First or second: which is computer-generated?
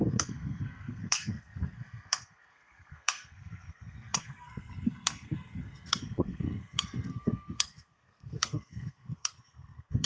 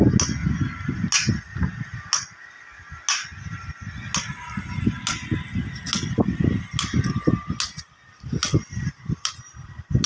first